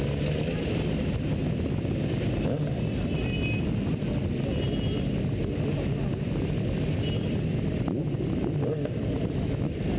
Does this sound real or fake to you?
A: real